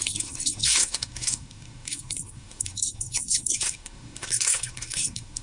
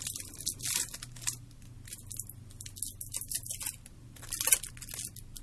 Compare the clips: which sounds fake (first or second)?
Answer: first